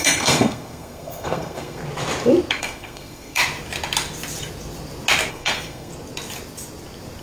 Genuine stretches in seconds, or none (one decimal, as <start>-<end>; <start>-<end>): 1.8-2.6; 3.4-5.3; 5.9-7.2